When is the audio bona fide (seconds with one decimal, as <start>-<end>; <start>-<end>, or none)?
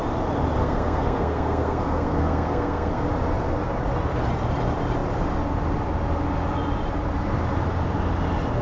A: 0.0-0.6; 3.0-8.6